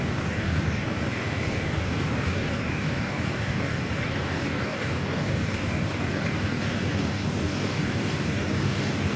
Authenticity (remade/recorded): remade